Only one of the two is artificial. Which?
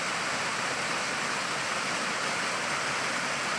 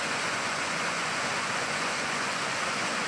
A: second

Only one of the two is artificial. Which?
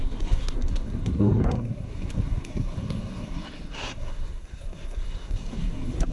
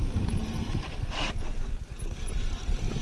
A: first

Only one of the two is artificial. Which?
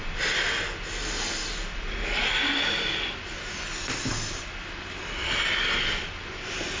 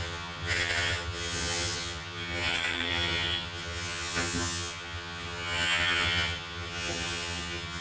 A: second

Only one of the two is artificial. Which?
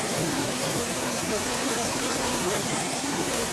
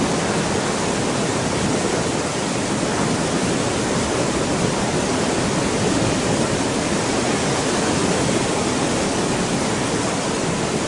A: first